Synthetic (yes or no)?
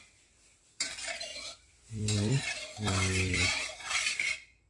yes